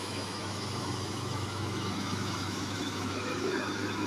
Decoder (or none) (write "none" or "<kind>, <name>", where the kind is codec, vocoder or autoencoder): autoencoder, DAC-VAE